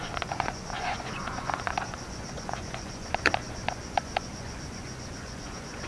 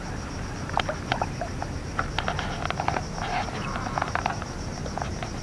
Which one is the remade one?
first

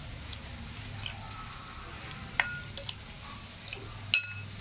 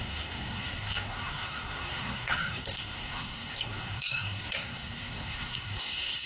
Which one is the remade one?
second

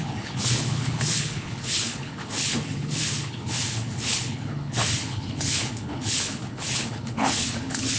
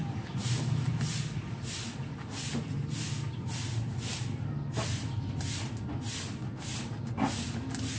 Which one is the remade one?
first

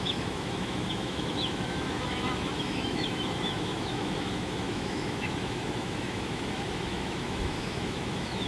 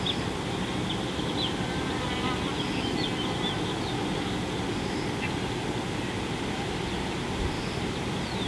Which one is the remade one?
first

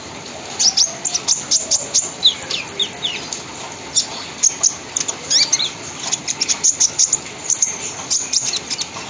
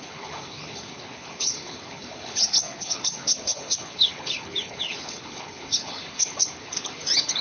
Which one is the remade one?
second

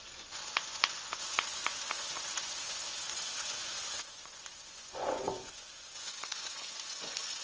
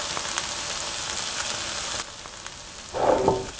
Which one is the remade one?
first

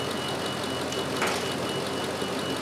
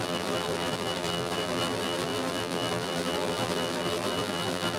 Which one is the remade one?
second